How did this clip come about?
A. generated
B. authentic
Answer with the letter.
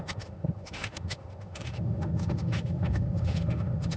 A